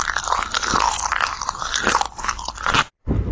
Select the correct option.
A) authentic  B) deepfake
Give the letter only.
A